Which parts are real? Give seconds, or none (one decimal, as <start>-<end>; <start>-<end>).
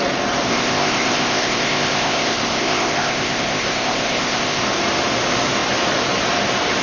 0.0-0.5; 4.6-6.8